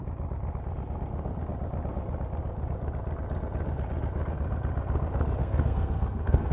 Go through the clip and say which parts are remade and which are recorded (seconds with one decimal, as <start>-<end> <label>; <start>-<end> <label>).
0.0-5.4 recorded; 5.4-6.5 remade